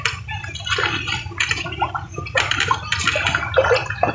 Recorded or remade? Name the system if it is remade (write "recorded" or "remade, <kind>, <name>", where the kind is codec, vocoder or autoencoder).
recorded